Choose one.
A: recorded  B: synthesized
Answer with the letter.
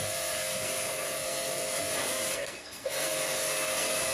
B